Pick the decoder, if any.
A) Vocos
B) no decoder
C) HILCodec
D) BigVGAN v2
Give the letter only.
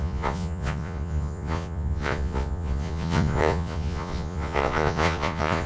A